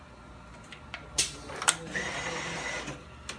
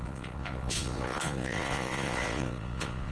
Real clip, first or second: first